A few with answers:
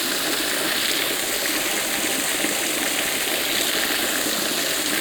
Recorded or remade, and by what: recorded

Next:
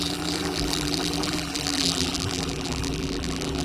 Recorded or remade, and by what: remade, vocoder, BigVGAN v2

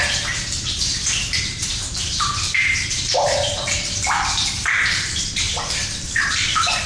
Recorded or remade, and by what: remade, vocoder, BigVGAN v2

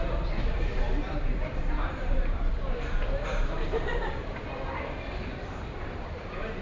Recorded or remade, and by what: remade, vocoder, BigVGAN v2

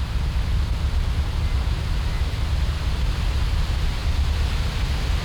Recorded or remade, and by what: recorded